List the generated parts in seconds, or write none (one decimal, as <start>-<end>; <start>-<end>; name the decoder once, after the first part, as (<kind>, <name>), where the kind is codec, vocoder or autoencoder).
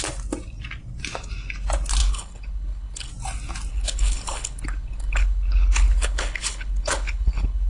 2.0-3.1 (codec, HILCodec); 3.7-7.7